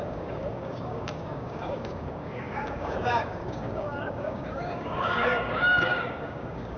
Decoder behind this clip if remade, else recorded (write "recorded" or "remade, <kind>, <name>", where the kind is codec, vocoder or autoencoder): remade, codec, DAC